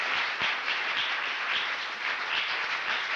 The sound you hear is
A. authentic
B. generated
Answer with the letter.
B